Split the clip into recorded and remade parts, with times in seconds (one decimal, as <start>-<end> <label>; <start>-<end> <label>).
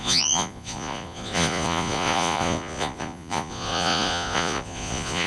0.0-5.3 remade